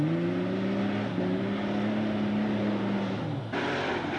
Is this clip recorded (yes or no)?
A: yes